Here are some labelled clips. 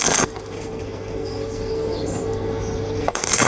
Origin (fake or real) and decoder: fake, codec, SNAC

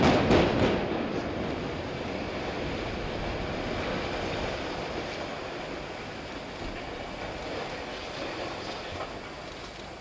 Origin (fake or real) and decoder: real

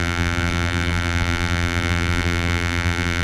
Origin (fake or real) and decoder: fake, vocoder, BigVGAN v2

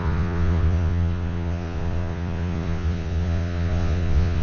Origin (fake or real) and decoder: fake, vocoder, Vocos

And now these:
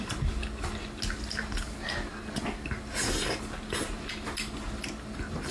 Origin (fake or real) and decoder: real